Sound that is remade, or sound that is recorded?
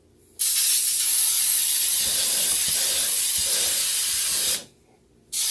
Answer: recorded